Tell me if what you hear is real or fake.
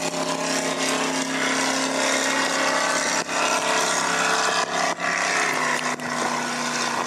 real